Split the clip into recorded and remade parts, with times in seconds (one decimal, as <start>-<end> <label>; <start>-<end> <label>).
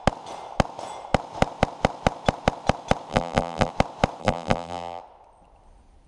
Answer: 0.0-3.1 recorded; 3.1-3.7 remade; 3.7-4.2 recorded; 4.2-5.0 remade; 5.0-6.1 recorded